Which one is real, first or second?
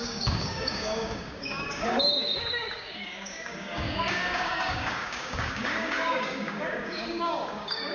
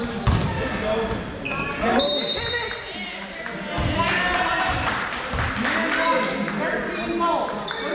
second